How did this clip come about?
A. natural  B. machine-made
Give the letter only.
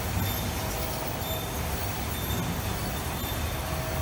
A